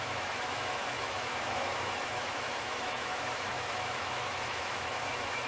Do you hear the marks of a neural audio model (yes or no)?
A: yes